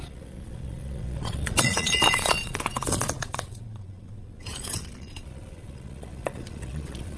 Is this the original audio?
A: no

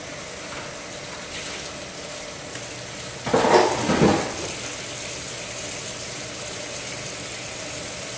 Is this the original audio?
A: yes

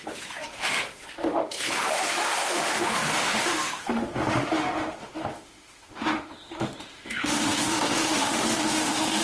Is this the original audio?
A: no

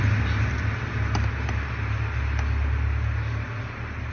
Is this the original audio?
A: yes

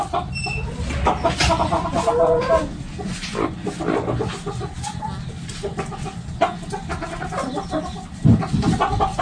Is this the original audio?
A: yes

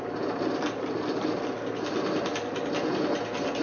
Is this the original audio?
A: yes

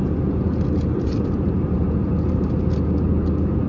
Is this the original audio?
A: yes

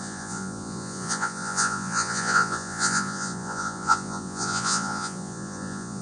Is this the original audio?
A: no